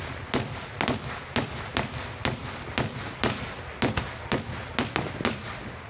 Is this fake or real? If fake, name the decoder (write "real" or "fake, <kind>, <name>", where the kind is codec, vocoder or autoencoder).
real